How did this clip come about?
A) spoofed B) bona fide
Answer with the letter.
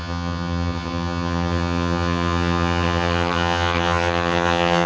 A